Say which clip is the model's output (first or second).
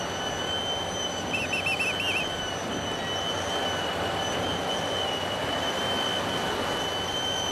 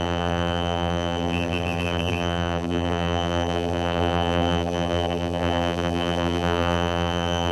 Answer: second